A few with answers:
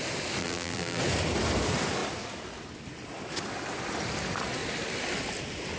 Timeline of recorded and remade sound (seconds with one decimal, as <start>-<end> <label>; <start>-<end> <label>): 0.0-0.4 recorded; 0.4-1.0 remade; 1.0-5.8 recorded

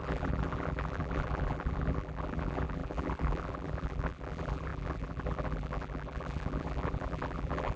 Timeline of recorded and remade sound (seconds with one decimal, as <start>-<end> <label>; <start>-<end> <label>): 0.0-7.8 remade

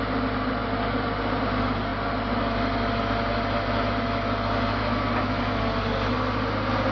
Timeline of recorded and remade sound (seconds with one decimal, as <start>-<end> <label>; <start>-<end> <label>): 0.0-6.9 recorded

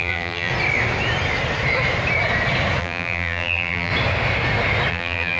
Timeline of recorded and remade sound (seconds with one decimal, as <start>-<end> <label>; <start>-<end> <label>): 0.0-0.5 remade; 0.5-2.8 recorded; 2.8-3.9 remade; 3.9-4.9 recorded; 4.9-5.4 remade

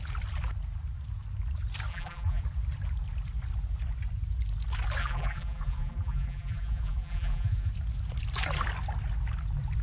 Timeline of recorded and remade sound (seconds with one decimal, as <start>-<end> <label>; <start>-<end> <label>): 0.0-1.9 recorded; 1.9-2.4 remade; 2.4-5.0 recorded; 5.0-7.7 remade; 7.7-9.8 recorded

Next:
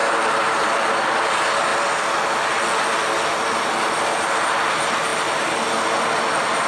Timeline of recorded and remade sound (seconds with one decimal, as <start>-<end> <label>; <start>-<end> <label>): 0.0-6.7 recorded

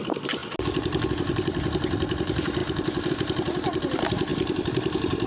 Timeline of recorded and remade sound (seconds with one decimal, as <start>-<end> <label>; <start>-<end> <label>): 0.0-0.4 remade; 0.4-1.1 recorded; 1.1-2.6 remade; 2.6-3.1 recorded; 3.1-5.3 remade